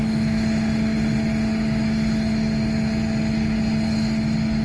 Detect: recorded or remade recorded